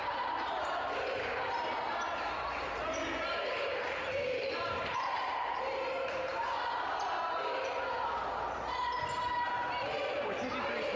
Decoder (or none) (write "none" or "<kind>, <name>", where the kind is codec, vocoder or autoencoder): vocoder, BigVGAN v2